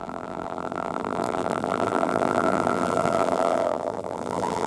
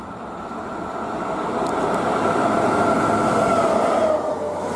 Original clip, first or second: second